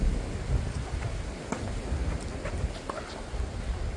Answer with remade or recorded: recorded